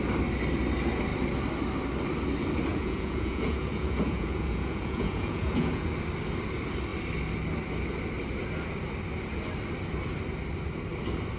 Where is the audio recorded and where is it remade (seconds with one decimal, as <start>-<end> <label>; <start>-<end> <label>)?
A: 0.0-2.7 recorded; 2.7-5.9 remade; 5.9-11.4 recorded

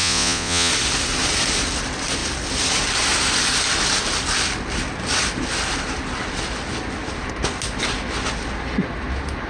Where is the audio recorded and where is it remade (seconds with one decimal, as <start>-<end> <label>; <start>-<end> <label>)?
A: 0.0-0.7 remade; 0.7-9.5 recorded

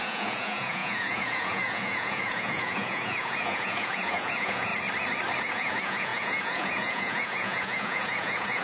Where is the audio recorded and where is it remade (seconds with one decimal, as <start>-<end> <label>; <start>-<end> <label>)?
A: 0.0-4.7 remade; 4.7-5.4 recorded; 5.4-8.6 remade

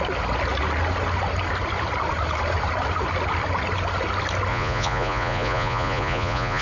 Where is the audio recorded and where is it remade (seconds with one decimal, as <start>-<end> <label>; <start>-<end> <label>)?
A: 0.0-4.5 recorded; 4.5-6.6 remade